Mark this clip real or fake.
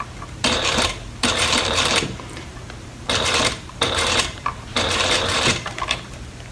fake